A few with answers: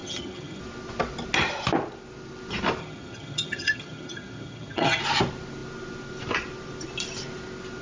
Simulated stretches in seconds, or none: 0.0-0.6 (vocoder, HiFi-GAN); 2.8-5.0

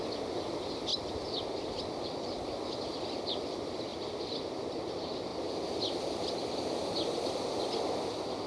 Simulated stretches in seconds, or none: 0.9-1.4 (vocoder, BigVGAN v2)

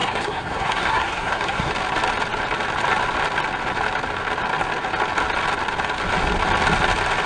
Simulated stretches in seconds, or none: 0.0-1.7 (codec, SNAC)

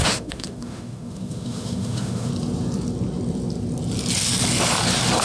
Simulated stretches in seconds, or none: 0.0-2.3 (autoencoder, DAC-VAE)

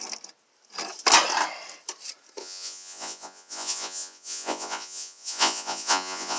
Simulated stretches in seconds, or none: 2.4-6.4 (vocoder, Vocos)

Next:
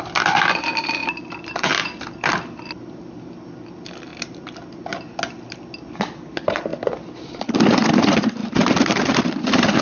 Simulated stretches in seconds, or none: 1.0-3.4 (vocoder, BigVGAN v2); 6.7-7.8; 8.4-9.2